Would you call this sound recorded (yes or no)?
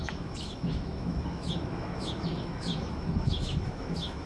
no